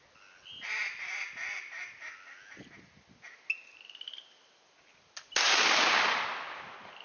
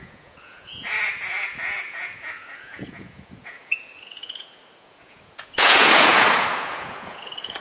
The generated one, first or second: second